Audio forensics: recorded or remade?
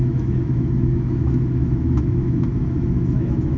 remade